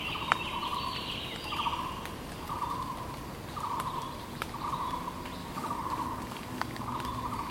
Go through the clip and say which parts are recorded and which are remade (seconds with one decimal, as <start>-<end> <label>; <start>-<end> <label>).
0.0-5.4 recorded; 5.4-7.0 remade; 7.0-7.5 recorded